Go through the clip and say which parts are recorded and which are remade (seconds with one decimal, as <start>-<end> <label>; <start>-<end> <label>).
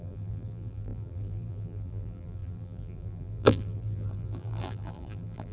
0.0-5.5 remade